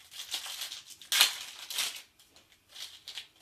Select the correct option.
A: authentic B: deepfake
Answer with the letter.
A